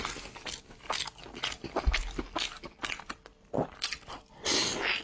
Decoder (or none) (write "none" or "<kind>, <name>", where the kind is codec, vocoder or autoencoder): none